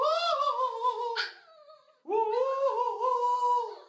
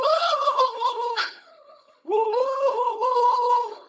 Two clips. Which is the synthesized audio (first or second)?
second